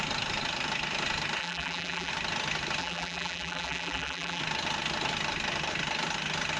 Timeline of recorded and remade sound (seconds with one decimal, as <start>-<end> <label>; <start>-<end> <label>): 0.0-1.4 recorded; 1.4-2.1 remade; 2.1-2.8 recorded; 2.8-4.4 remade; 4.4-6.6 recorded